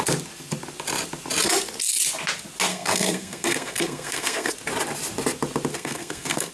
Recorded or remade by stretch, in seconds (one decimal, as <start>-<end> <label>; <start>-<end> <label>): 0.0-2.7 recorded; 2.7-4.5 remade; 4.5-5.7 recorded; 5.7-6.5 remade